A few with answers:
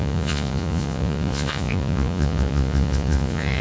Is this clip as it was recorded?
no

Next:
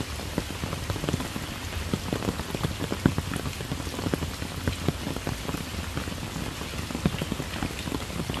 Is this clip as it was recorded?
yes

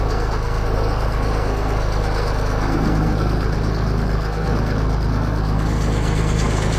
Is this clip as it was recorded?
no